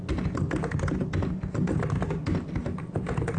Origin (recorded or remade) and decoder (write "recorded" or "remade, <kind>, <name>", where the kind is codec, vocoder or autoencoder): recorded